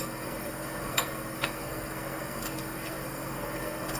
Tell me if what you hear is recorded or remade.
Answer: remade